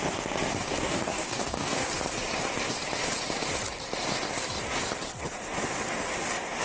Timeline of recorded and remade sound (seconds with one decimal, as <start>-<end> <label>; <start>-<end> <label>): 0.0-0.5 recorded; 0.5-1.9 remade; 1.9-6.6 recorded